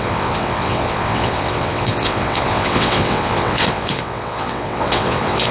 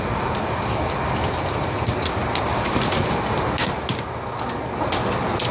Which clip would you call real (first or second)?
second